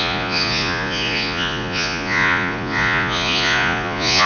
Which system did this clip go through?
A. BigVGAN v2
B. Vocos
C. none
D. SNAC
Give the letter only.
B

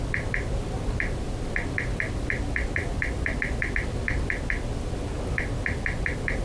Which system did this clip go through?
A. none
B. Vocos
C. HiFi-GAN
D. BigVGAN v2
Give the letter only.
A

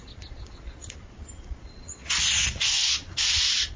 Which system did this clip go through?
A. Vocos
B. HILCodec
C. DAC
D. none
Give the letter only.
A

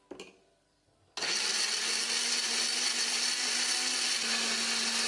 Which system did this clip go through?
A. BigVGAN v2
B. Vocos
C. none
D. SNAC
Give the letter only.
C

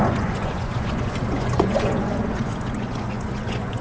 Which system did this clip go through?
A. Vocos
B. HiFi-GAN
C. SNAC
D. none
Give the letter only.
A